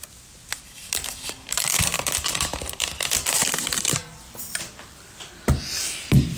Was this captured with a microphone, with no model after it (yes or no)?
no